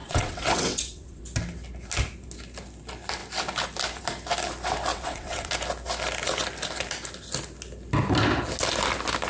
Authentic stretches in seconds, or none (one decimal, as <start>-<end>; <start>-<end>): 1.2-4.9; 5.5-9.3

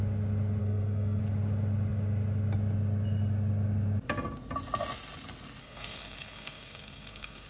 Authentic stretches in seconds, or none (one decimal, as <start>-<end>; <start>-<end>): 0.0-0.6; 1.2-5.6

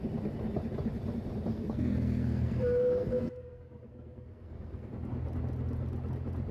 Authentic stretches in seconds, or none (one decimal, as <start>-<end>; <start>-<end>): 0.0-1.5; 4.9-6.5